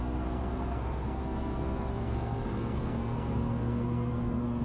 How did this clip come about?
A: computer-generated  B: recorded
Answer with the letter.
A